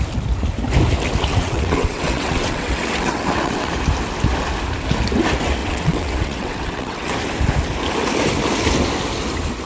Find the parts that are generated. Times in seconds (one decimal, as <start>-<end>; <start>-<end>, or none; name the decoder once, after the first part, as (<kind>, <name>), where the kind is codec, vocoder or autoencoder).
1.3-3.7 (vocoder, WaveNeXt); 5.6-7.1